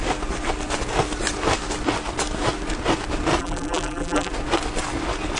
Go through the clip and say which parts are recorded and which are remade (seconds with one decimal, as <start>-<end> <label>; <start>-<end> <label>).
0.0-3.4 recorded; 3.4-4.3 remade; 4.3-5.4 recorded